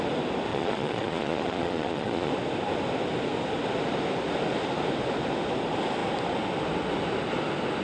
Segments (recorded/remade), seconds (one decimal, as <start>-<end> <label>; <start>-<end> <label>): 0.0-0.5 recorded; 0.5-2.3 remade; 2.3-7.8 recorded